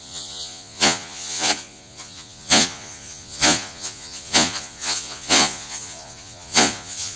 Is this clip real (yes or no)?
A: no